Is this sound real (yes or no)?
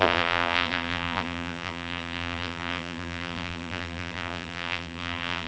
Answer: no